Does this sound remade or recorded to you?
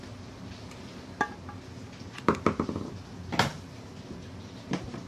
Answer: recorded